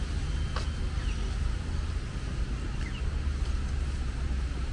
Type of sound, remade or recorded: recorded